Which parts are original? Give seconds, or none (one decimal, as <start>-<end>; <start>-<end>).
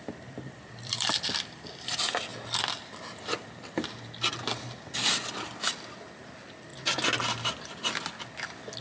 2.3-5.4; 6.7-8.8